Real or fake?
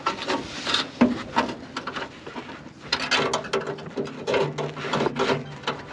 real